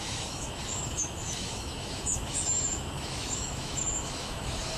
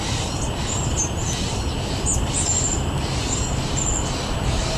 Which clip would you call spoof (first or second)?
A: first